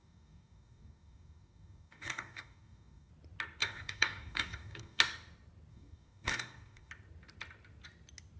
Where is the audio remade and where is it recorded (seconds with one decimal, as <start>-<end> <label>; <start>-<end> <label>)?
0.0-3.1 remade; 3.1-3.6 recorded; 3.6-5.0 remade; 5.0-5.7 recorded; 5.7-6.9 remade; 6.9-8.4 recorded